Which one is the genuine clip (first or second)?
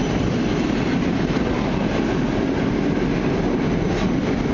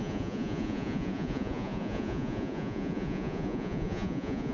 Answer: first